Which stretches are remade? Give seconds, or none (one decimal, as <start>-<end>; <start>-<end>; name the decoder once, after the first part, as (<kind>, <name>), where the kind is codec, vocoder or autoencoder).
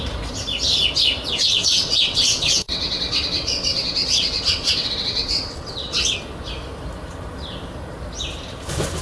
1.4-6.2 (vocoder, WaveNeXt)